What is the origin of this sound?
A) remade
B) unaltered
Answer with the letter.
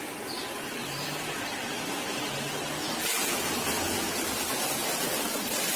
B